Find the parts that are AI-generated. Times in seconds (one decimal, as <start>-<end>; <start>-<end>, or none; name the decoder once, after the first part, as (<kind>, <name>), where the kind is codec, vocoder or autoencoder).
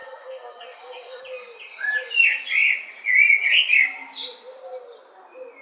0.0-1.2 (codec, SNAC)